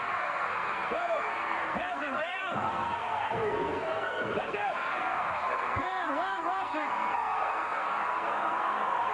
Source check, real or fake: fake